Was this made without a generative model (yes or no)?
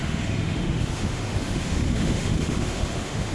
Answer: no